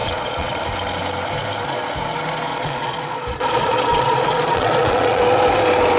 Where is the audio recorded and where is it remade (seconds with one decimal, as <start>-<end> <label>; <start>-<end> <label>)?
0.0-0.6 remade; 0.6-2.5 recorded; 2.5-5.2 remade; 5.2-6.0 recorded